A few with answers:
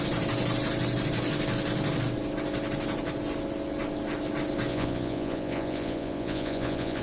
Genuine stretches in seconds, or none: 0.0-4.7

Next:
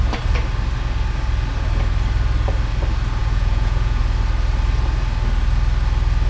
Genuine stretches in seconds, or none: 0.0-3.2; 4.0-6.3

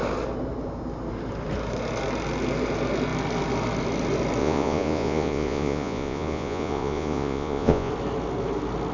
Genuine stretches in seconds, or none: 0.0-4.4; 7.9-8.9

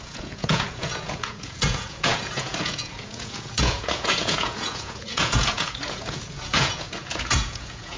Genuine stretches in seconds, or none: none

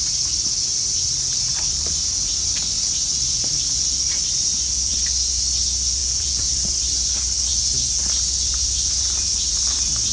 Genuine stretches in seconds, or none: 0.0-6.0; 6.5-10.1